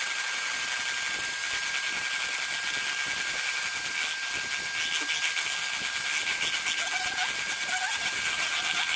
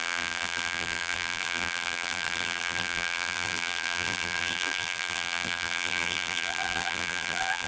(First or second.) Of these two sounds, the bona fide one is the first